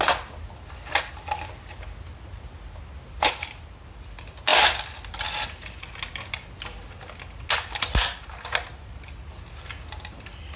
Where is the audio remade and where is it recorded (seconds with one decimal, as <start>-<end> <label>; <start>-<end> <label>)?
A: 0.0-10.6 recorded